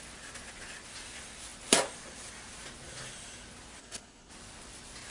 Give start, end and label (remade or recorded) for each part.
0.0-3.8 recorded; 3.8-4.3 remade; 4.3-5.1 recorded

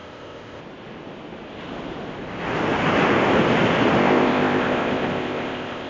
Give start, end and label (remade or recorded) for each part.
0.0-0.6 remade; 0.6-4.0 recorded; 4.0-5.9 remade

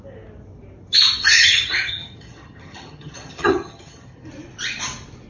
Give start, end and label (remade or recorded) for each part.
0.0-1.2 recorded; 1.2-4.3 remade; 4.3-5.3 recorded

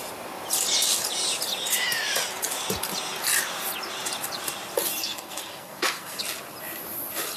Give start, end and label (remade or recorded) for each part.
0.0-5.0 recorded; 5.0-6.2 remade; 6.2-7.4 recorded

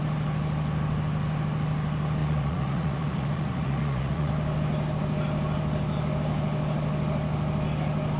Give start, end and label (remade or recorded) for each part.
0.0-2.2 recorded; 2.2-4.3 remade; 4.3-8.2 recorded

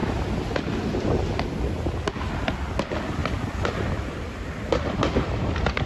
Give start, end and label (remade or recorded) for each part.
0.0-2.1 recorded; 2.1-5.9 remade

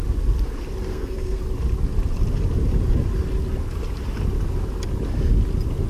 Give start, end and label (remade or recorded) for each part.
0.0-0.9 recorded; 0.9-1.4 remade; 1.4-5.9 recorded